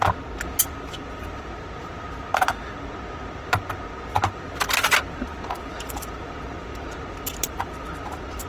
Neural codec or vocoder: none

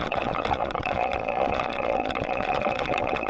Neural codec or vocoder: vocoder, Vocos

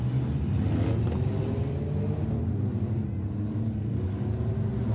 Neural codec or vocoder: none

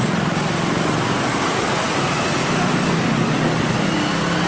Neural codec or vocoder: none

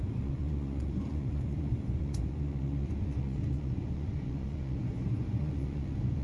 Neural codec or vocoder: vocoder, Vocos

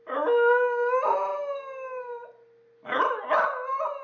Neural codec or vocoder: none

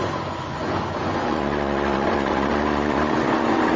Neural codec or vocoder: vocoder, Vocos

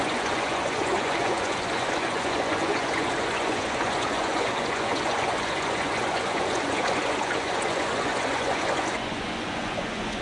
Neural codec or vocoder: vocoder, Vocos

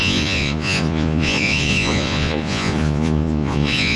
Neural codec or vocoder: vocoder, Vocos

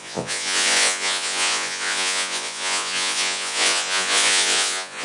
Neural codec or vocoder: vocoder, Vocos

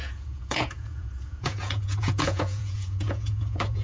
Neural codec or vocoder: vocoder, Vocos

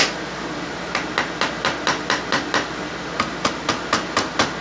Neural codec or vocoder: none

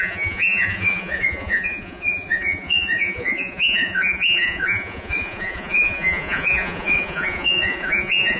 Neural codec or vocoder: vocoder, Vocos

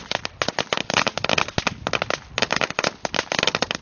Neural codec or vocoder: none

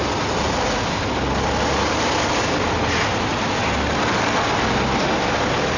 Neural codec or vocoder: none